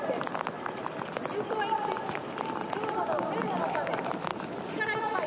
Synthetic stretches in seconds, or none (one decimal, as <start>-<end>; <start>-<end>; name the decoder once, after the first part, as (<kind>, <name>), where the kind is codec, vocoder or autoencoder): none